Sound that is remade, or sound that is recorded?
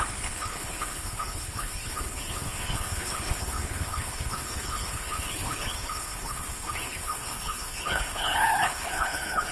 remade